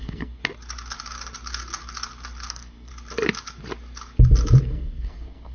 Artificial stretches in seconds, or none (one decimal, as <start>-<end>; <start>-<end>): 0.0-0.4; 2.5-2.9; 4.6-5.5